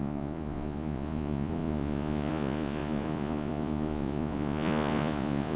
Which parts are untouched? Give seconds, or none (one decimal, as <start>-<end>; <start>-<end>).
none